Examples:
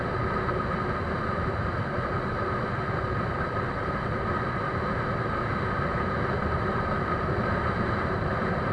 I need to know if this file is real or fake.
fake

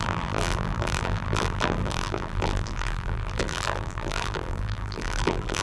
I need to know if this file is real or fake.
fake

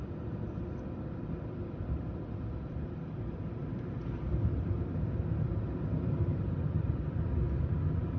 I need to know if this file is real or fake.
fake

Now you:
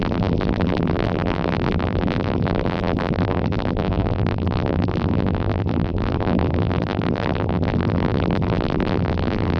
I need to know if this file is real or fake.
fake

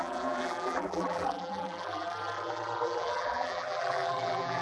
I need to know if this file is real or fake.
fake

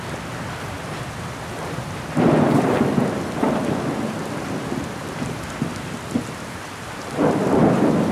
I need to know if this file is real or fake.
fake